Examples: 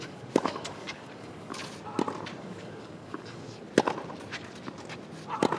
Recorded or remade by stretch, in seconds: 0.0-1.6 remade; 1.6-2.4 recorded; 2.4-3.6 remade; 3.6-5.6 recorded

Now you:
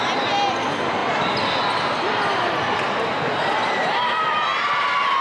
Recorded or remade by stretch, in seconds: 0.0-3.6 recorded; 3.6-4.7 remade; 4.7-5.2 recorded